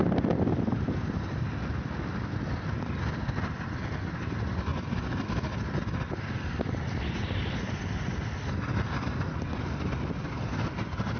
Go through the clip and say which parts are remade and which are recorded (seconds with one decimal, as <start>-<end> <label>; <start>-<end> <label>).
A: 0.0-11.2 recorded